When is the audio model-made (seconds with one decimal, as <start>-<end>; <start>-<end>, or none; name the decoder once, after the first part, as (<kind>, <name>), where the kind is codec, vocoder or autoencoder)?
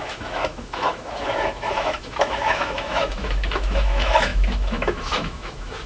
0.0-5.9 (autoencoder, DAC-VAE)